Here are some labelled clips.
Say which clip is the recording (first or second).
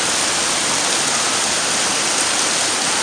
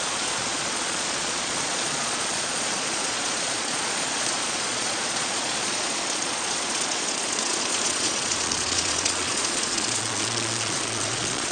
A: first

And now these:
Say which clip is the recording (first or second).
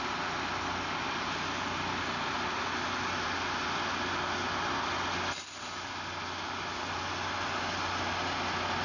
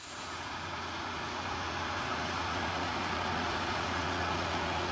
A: first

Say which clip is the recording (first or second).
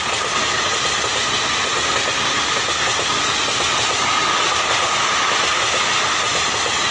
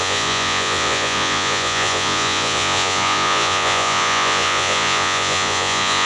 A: first